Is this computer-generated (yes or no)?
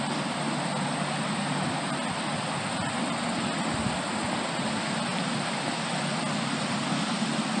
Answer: no